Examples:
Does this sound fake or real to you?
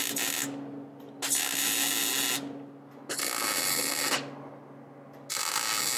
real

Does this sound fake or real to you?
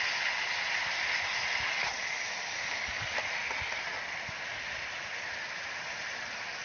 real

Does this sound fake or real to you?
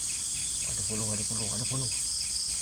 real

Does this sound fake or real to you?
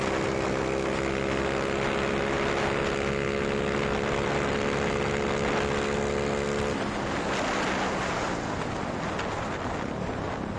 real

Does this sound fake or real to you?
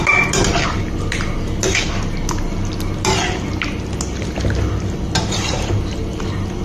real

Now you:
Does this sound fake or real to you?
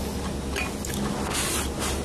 real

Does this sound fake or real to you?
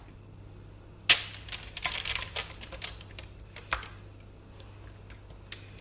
real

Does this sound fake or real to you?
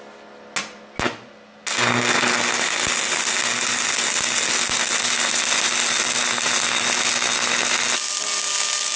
real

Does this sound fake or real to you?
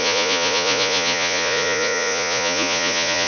fake